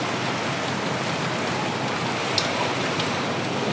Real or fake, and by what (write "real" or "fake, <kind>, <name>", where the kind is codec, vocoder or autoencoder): real